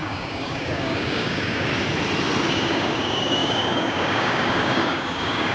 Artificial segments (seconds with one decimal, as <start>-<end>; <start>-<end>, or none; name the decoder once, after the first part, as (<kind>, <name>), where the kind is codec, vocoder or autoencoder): 0.0-1.7 (codec, DAC); 2.5-5.5